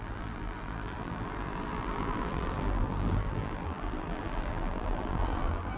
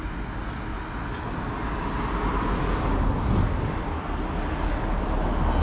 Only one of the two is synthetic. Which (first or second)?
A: first